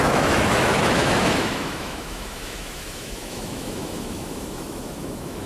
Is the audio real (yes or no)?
no